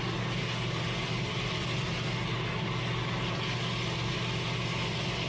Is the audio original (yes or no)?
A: yes